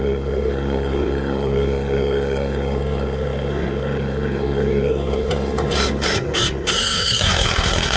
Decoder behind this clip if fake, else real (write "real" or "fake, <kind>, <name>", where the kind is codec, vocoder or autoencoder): fake, codec, SNAC